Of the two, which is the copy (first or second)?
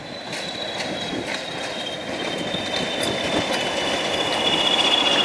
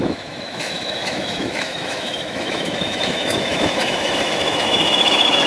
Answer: second